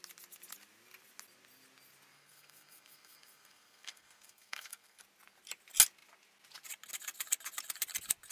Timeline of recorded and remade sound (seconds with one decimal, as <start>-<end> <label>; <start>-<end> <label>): 0.0-2.1 recorded; 2.1-5.0 remade; 5.0-8.3 recorded